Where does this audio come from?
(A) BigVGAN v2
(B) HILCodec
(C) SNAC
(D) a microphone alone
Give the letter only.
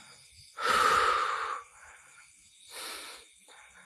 D